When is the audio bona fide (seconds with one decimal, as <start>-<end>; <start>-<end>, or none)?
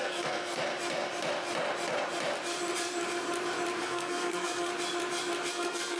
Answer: 0.6-3.8; 4.7-5.5